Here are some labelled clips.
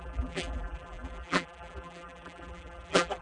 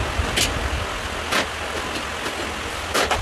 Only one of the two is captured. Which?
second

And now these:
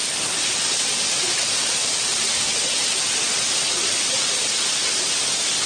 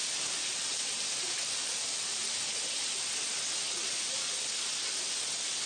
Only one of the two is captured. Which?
second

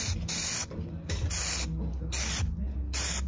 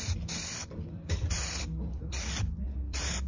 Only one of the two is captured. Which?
first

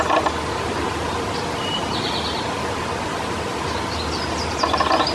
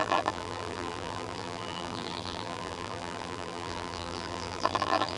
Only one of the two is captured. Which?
first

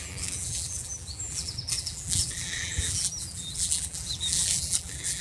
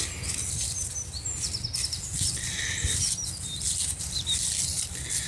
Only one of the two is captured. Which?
second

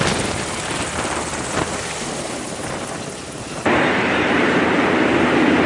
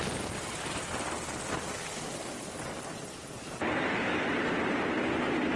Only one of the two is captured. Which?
second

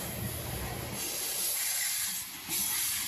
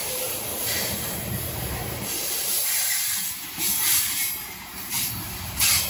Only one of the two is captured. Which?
first